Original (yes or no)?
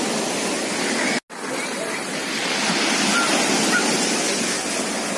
yes